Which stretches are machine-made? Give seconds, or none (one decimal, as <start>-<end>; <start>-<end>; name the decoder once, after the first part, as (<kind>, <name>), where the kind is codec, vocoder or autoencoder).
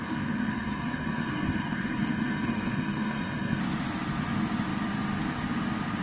0.0-3.6 (codec, SNAC)